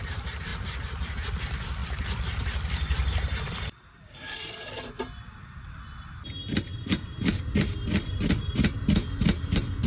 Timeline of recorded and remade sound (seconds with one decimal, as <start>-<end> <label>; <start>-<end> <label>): 0.0-1.8 recorded; 1.8-5.0 remade; 5.0-9.9 recorded